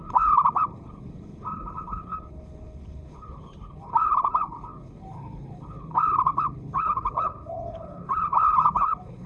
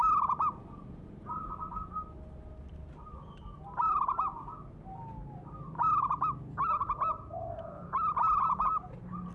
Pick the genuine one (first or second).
second